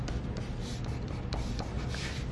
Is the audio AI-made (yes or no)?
no